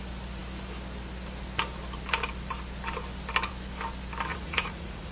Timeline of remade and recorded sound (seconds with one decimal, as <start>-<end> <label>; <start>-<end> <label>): 0.0-4.3 recorded; 4.3-5.1 remade